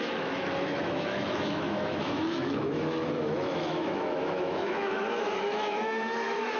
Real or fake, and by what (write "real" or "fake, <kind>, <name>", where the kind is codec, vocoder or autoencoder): fake, autoencoder, DAC-VAE